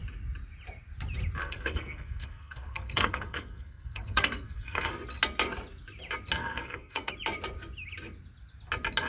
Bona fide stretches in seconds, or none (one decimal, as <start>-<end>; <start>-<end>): 0.0-1.4; 4.9-6.4; 7.1-9.1